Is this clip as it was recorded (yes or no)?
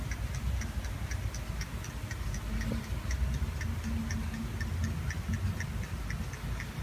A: yes